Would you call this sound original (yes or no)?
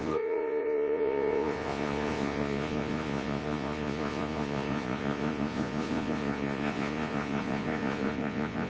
no